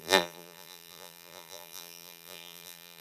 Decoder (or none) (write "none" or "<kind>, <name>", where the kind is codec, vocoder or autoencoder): vocoder, BigVGAN v2